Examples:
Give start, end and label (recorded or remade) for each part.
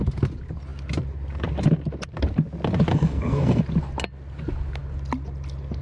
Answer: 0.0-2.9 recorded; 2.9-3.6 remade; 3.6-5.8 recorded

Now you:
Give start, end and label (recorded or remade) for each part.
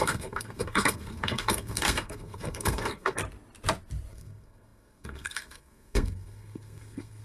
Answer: 0.0-3.2 remade; 3.2-4.1 recorded; 4.1-7.2 remade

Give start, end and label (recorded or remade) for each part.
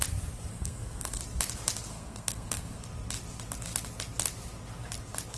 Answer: 0.0-0.5 recorded; 0.5-1.2 remade; 1.2-1.9 recorded; 1.9-2.8 remade; 2.8-5.4 recorded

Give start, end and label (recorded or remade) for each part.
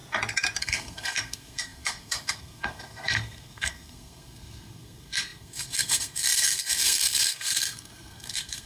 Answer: 0.0-0.6 recorded; 0.6-8.7 remade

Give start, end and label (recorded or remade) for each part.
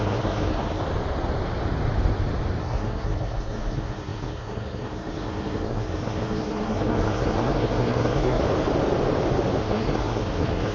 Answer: 0.0-0.8 remade; 0.8-2.6 recorded; 2.6-8.4 remade; 8.4-9.6 recorded; 9.6-10.7 remade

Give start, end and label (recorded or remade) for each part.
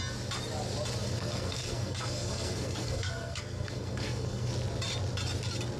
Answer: 0.0-1.0 recorded; 1.0-4.5 remade; 4.5-5.8 recorded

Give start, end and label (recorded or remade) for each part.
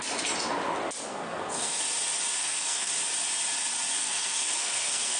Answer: 0.0-1.1 recorded; 1.1-1.8 remade; 1.8-2.4 recorded; 2.4-2.9 remade; 2.9-4.0 recorded; 4.0-5.2 remade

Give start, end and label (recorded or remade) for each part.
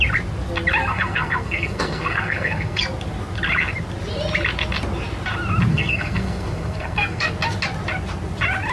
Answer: 0.0-0.8 recorded; 0.8-2.8 remade; 2.8-5.7 recorded; 5.7-7.3 remade; 7.3-8.7 recorded